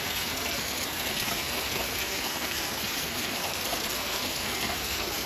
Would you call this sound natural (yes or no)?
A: no